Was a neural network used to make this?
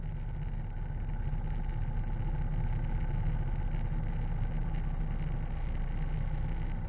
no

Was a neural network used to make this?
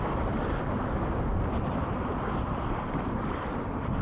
no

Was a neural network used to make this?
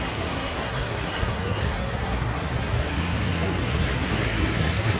yes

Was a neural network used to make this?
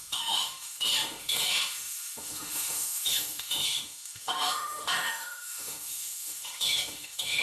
yes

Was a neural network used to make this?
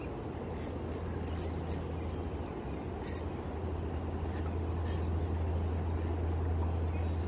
no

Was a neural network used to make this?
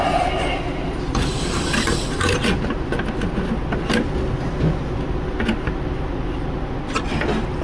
no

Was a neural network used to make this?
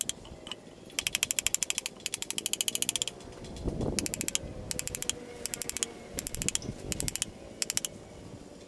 no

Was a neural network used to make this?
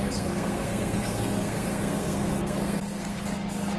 yes